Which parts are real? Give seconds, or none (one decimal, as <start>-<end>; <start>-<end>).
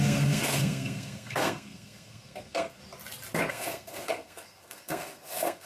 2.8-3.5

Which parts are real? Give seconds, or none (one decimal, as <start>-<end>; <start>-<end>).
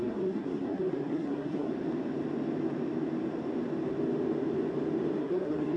1.7-5.2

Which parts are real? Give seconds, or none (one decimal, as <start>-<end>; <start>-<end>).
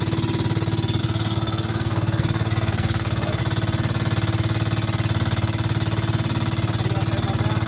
0.0-1.0; 3.4-7.7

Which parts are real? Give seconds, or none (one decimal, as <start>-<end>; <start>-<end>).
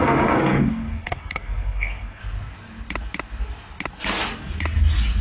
2.2-5.2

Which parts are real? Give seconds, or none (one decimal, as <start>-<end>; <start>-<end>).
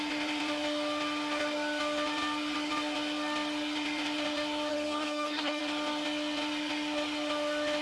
0.0-4.7; 5.6-7.8